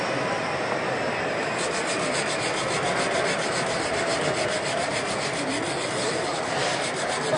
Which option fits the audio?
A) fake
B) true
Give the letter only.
B